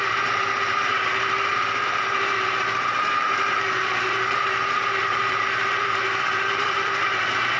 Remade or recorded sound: remade